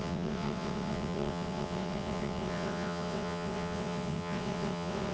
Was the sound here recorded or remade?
remade